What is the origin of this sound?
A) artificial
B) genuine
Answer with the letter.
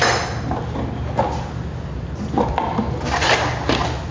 B